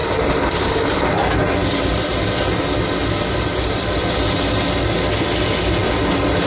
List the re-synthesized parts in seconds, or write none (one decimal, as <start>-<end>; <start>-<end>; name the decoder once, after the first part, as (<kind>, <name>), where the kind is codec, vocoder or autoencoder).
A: 0.0-1.1 (vocoder, BigVGAN v2); 1.6-2.4

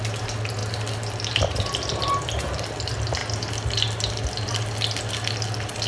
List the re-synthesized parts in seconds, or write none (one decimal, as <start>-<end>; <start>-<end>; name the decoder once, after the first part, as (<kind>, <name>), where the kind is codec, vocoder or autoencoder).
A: none

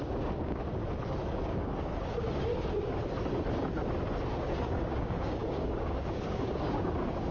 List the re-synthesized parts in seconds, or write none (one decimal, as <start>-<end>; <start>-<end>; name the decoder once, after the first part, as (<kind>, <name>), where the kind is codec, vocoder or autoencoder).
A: 0.0-0.8 (codec, DAC); 1.4-2.5; 4.4-7.3

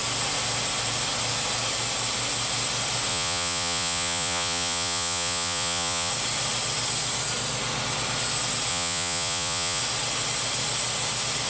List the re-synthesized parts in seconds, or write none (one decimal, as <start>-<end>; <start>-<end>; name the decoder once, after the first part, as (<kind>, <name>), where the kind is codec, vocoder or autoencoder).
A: 3.1-6.1 (vocoder, Vocos); 8.7-9.8

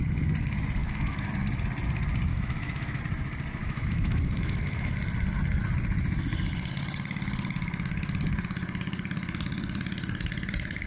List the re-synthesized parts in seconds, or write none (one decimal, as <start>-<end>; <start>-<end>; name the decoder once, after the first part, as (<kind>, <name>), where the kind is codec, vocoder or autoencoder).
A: 0.8-1.3 (autoencoder, DAC-VAE); 2.3-3.0; 3.6-5.0

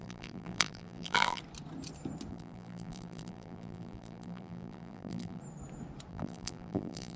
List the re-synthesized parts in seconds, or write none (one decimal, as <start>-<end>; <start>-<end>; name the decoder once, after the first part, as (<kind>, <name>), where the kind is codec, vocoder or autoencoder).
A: 0.0-1.4 (vocoder, BigVGAN v2); 2.3-5.4; 6.1-7.2

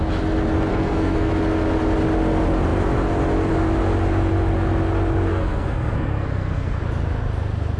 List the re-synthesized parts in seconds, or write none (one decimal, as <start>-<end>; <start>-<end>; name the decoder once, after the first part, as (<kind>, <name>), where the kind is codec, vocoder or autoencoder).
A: 0.7-1.3 (codec, SNAC); 5.3-6.8